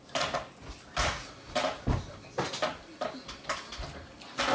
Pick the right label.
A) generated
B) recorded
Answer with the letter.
B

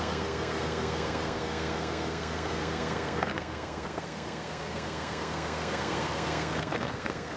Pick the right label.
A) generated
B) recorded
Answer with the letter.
A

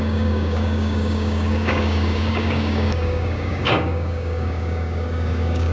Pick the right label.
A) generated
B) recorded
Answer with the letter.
A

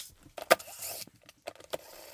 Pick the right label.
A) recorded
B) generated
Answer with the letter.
A